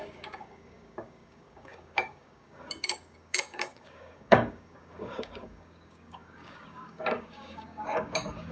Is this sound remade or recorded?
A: remade